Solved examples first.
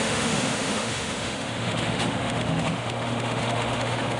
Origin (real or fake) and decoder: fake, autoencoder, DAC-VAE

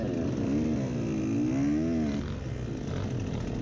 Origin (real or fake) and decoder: real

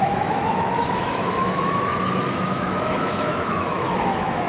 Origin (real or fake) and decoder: fake, autoencoder, DAC-VAE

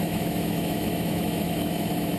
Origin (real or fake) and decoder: fake, autoencoder, DAC-VAE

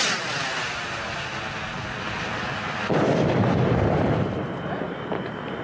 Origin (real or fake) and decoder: real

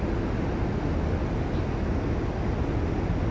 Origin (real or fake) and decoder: real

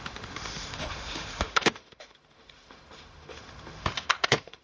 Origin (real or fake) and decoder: fake, autoencoder, DAC-VAE